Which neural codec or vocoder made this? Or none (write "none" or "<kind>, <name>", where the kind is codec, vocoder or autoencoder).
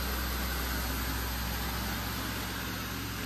none